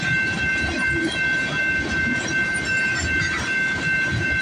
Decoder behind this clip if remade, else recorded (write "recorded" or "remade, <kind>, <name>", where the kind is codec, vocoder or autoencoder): recorded